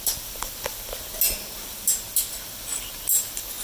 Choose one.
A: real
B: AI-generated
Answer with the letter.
A